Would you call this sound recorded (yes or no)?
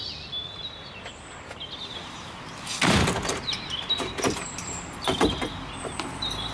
yes